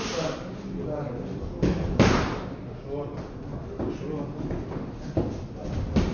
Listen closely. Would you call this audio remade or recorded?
recorded